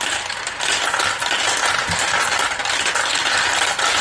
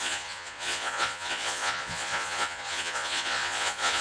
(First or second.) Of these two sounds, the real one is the first